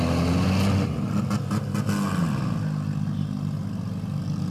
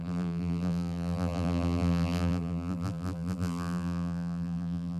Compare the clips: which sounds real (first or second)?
first